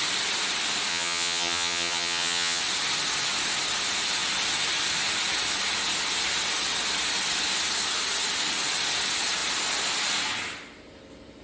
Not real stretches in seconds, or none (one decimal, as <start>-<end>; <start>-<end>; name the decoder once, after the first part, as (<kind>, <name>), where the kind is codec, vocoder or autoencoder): 0.9-2.6 (vocoder, HiFi-GAN)